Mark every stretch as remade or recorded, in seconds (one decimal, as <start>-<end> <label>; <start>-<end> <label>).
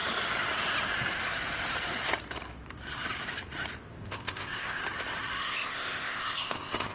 0.0-3.9 recorded; 3.9-4.8 remade; 4.8-5.4 recorded; 5.4-6.9 remade